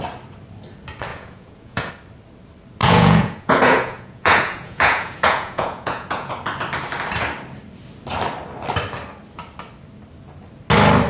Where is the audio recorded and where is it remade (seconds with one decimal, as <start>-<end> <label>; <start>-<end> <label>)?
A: 0.0-1.1 recorded; 1.1-1.9 remade; 1.9-2.8 recorded; 2.8-6.3 remade; 6.3-11.1 recorded